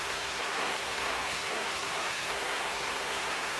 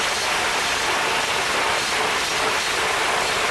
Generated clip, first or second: first